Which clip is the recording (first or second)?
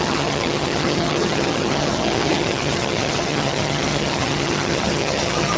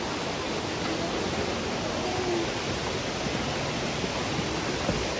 second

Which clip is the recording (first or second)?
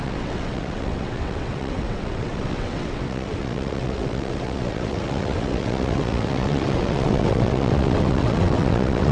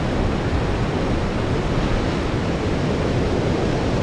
second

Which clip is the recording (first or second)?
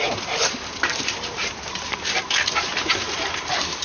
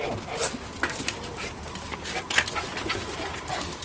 second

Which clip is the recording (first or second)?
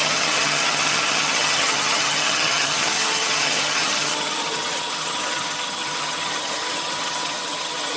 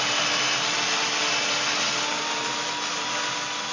second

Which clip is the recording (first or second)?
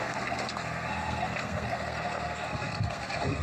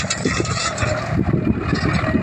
second